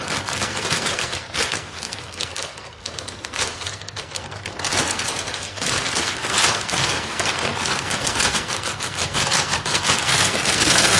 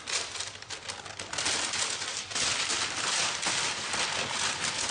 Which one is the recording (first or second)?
second